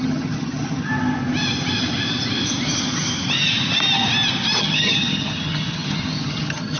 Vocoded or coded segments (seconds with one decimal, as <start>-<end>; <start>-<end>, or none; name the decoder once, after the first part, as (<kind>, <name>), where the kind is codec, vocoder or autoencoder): 0.0-0.9 (vocoder, HiFi-GAN); 4.6-6.8